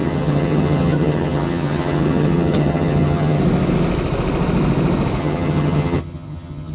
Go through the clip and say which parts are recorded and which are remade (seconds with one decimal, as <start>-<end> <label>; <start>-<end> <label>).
0.0-3.4 remade; 3.4-5.2 recorded; 5.2-6.7 remade